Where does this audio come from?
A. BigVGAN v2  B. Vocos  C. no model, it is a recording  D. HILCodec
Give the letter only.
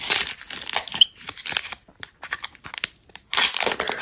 C